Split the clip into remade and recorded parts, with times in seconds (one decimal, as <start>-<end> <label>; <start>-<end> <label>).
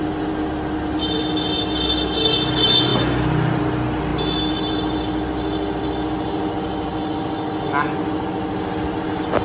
0.0-9.4 recorded